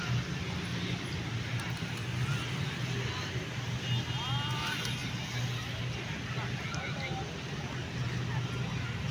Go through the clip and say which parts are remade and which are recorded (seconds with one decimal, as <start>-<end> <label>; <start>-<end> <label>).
0.0-9.1 recorded